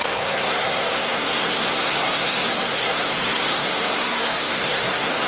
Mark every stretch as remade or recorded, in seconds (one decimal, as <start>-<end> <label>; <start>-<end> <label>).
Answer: 0.0-5.3 remade